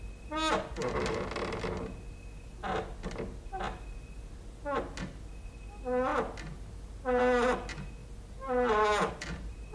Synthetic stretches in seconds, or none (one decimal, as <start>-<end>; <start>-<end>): none